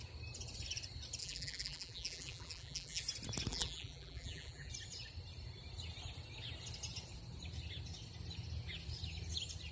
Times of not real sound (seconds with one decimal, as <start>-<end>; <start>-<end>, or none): 1.2-3.0; 3.5-4.7